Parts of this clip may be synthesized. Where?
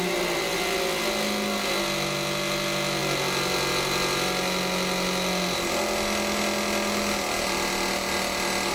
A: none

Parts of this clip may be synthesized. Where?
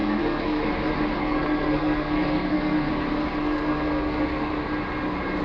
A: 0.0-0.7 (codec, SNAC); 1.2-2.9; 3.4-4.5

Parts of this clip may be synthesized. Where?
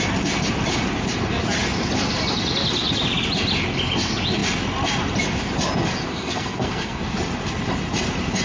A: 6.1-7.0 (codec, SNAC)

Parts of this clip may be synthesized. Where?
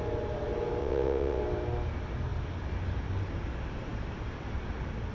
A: 0.8-1.4 (vocoder, WaveNeXt)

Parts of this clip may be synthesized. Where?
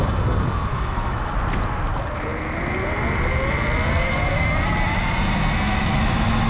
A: 0.7-1.3 (autoencoder, DAC-VAE); 5.7-6.5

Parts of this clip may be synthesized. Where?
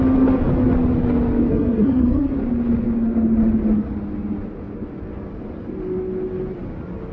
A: 1.5-2.3 (codec, SNAC)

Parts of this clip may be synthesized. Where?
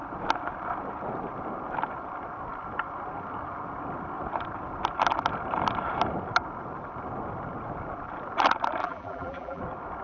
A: 8.8-9.6 (vocoder, BigVGAN v2)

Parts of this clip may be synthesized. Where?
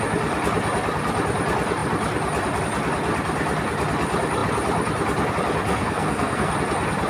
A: 5.7-6.5 (codec, SNAC)